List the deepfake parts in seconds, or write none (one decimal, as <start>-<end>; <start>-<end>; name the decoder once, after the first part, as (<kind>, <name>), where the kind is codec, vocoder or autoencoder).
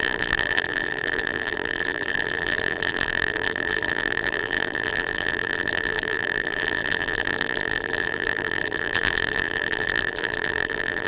0.0-11.1 (vocoder, BigVGAN v2)